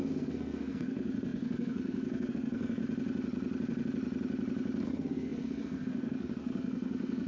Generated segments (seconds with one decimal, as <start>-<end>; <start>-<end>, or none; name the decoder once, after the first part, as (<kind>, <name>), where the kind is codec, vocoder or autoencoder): 0.0-2.8 (codec, SNAC); 4.8-7.3